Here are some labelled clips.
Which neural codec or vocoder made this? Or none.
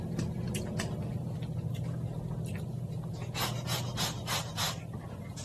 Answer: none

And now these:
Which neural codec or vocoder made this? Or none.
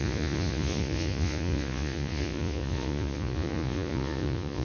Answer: vocoder, Vocos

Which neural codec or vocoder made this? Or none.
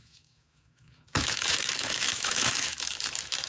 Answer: autoencoder, DAC-VAE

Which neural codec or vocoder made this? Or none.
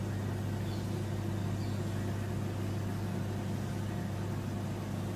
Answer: none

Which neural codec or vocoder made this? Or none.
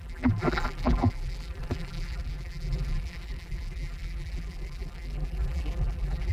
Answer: vocoder, BigVGAN v2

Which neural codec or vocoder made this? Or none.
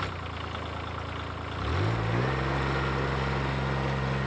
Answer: none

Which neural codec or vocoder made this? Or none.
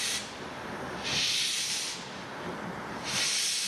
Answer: vocoder, BigVGAN v2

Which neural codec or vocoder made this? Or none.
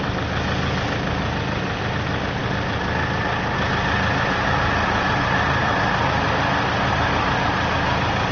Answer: none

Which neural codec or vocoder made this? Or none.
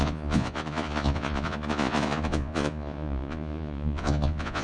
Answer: vocoder, Vocos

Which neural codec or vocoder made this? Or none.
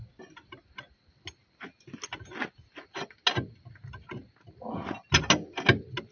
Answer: none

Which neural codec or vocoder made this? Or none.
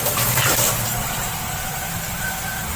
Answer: vocoder, BigVGAN v2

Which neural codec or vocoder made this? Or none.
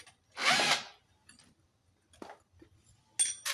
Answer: none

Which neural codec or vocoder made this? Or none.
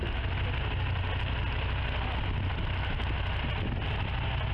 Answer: none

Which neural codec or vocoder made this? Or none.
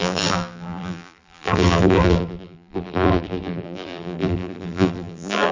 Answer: vocoder, BigVGAN v2